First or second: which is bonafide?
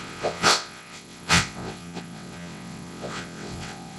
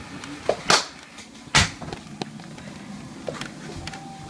second